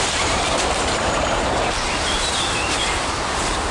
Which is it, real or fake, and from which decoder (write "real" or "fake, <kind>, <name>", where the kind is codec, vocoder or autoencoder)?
fake, vocoder, BigVGAN v2